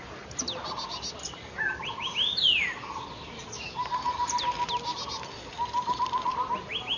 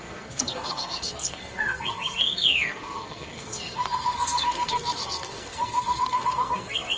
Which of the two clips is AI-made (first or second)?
second